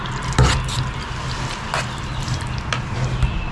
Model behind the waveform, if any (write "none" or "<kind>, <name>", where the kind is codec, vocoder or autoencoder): none